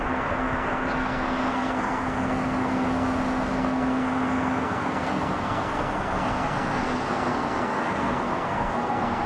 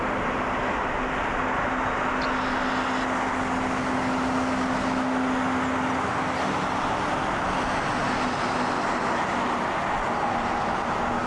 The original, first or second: second